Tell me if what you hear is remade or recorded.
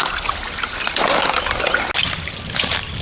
recorded